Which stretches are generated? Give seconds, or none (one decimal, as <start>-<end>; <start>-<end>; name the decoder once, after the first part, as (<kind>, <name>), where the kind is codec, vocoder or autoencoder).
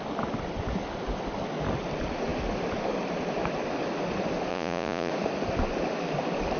4.5-5.1 (vocoder, Vocos)